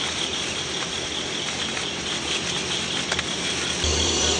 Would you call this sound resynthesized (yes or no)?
no